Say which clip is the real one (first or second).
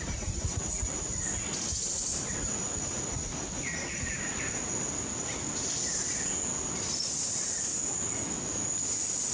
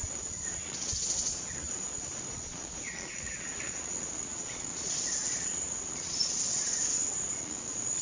first